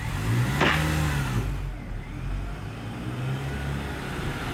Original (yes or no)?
yes